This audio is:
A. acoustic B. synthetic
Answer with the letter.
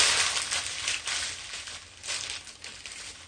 A